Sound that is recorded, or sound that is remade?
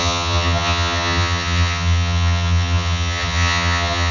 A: remade